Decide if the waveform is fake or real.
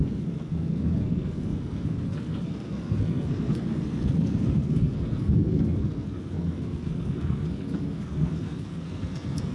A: fake